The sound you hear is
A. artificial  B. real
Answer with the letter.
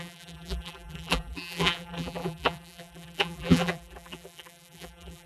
A